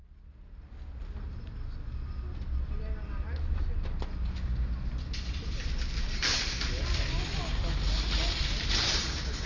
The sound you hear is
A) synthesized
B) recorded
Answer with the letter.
B